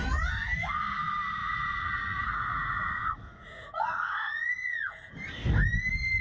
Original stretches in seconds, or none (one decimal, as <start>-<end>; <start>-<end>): 0.0-1.4; 5.1-6.2